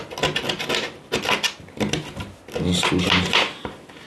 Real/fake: real